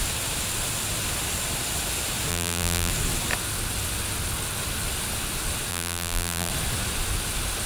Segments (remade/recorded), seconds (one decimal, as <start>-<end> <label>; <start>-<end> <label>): 0.0-2.3 recorded; 2.3-2.9 remade; 2.9-5.7 recorded; 5.7-6.5 remade; 6.5-7.7 recorded